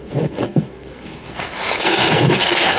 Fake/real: fake